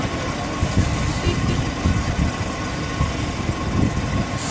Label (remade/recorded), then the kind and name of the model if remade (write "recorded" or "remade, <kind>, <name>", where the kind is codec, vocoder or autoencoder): recorded